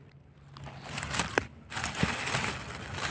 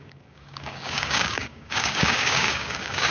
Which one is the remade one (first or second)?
second